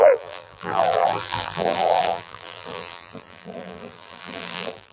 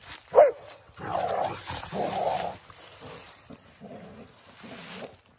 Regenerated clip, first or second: first